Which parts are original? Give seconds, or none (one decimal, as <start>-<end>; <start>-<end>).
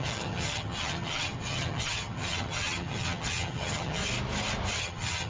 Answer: 4.0-4.8